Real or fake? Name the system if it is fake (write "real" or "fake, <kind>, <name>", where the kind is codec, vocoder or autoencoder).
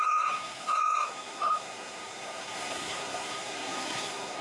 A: fake, codec, SNAC